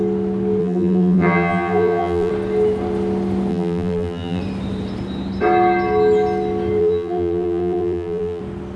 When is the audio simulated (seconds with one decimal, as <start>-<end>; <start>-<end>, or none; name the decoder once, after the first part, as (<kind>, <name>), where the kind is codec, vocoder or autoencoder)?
0.6-2.3 (vocoder, BigVGAN v2); 3.5-4.4; 6.8-8.4